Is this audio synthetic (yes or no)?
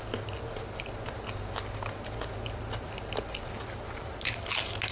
no